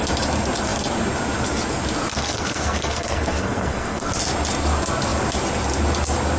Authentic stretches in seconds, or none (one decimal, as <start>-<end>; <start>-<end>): 0.0-2.1; 4.1-6.4